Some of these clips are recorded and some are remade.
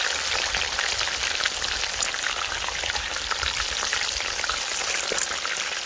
recorded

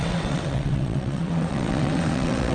remade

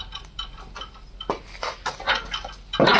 recorded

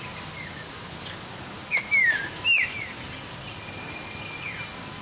recorded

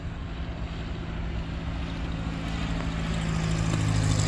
recorded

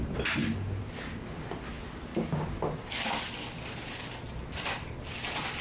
recorded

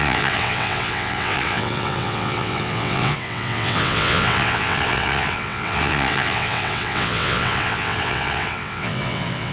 remade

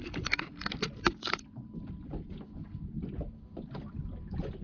recorded